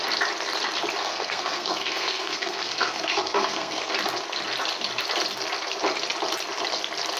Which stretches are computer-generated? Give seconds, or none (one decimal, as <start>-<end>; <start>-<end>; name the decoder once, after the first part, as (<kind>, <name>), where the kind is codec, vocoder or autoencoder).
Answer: 1.0-3.9 (codec, SNAC)